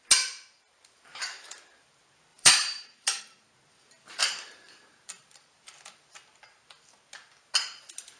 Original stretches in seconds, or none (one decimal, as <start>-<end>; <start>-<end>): 0.0-2.3; 3.2-4.2; 6.4-8.2